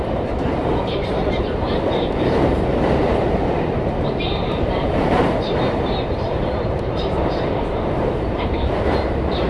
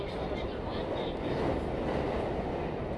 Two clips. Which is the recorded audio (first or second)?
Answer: second